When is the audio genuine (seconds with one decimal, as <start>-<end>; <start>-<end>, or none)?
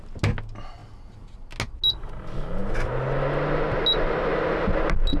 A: 0.0-5.2